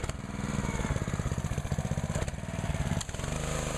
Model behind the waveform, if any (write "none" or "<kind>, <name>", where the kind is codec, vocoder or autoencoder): vocoder, BigVGAN v2